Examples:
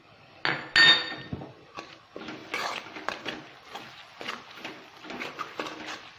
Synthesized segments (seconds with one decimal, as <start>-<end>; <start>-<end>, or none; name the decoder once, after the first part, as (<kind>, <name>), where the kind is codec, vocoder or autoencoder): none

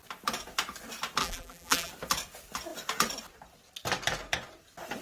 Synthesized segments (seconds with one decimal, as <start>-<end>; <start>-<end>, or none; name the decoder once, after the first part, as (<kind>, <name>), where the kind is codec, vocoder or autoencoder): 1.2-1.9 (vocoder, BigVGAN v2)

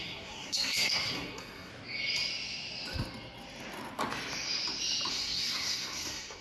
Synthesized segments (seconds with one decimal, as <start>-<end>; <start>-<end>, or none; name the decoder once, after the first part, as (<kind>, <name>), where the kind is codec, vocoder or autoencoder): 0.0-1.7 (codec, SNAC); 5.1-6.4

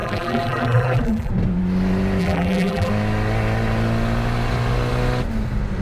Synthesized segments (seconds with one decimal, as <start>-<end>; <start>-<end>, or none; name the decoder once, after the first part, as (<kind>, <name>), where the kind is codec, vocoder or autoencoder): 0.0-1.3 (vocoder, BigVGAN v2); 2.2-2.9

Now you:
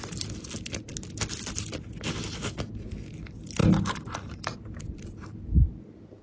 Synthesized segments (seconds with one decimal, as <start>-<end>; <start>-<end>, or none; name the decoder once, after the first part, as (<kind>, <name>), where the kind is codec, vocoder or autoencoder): 3.6-5.8 (vocoder, BigVGAN v2)